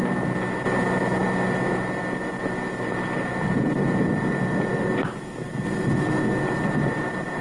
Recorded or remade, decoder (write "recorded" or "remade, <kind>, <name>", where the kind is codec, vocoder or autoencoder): recorded